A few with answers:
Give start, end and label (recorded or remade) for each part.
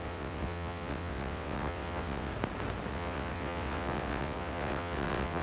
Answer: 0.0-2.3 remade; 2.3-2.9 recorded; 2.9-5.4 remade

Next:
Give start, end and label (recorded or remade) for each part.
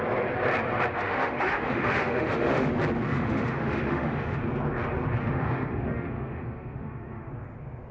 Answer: 0.0-1.0 recorded; 1.0-2.7 remade; 2.7-3.1 recorded; 3.1-4.4 remade; 4.4-5.2 recorded; 5.2-7.3 remade; 7.3-7.9 recorded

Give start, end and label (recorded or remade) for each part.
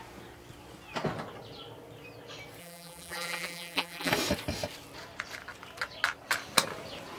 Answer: 0.0-2.6 recorded; 2.6-4.1 remade; 4.1-7.2 recorded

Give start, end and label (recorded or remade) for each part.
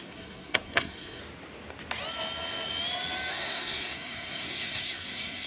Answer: 0.0-1.2 remade; 1.2-3.3 recorded; 3.3-5.5 remade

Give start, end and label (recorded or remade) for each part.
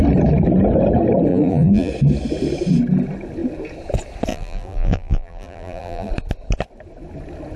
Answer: 0.0-1.3 recorded; 1.3-1.9 remade; 1.9-4.3 recorded; 4.3-6.1 remade; 6.1-7.6 recorded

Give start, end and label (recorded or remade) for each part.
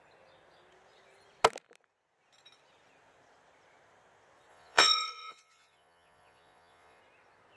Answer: 0.0-4.5 recorded; 4.5-7.0 remade; 7.0-7.6 recorded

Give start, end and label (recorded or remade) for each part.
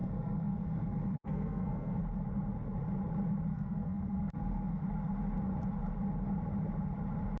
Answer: 0.0-2.0 remade; 2.0-3.5 recorded; 3.5-4.8 remade; 4.8-7.4 recorded